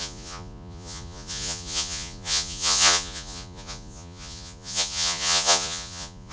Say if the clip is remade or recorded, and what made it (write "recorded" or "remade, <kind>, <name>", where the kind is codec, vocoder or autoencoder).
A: remade, vocoder, Vocos